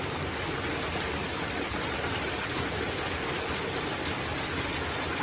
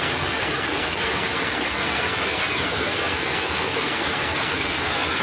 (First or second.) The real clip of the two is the first